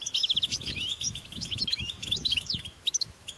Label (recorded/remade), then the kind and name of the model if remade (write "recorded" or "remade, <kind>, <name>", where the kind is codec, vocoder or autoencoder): remade, autoencoder, DAC-VAE